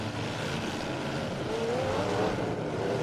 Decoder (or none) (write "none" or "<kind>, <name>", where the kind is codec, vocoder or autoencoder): none